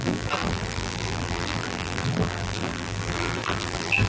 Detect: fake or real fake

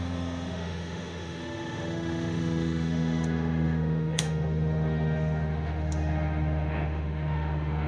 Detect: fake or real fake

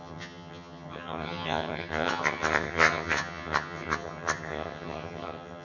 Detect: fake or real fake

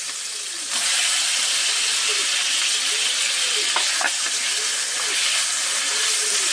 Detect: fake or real real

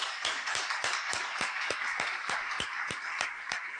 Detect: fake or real fake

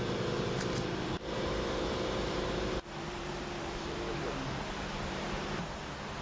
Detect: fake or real fake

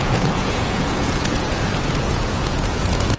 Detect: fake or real fake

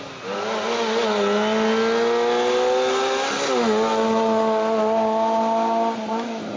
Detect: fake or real real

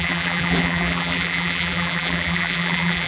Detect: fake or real fake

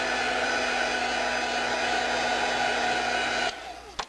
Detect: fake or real real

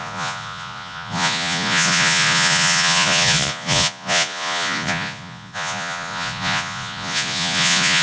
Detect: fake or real fake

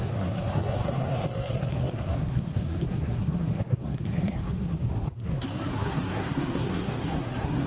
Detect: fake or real fake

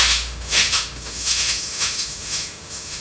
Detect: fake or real fake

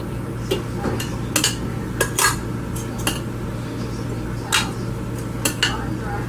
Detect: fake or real real